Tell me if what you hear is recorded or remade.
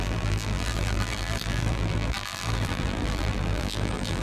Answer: remade